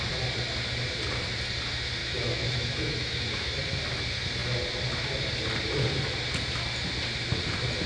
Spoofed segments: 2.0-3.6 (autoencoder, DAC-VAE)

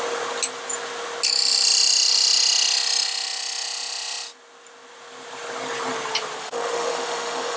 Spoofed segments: 6.4-7.6 (autoencoder, DAC-VAE)

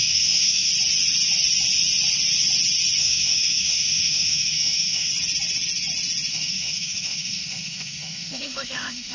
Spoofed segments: 0.0-0.7 (autoencoder, DAC-VAE); 3.0-5.1; 6.3-9.1

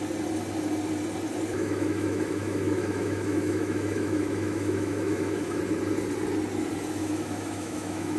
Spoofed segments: 1.5-5.6 (autoencoder, DAC-VAE); 7.0-8.2

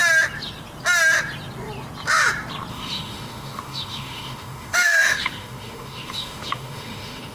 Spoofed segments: 2.7-7.3 (autoencoder, DAC-VAE)